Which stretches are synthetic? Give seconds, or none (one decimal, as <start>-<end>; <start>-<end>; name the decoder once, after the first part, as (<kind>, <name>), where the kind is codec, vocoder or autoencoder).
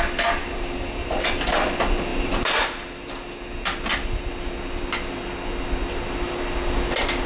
none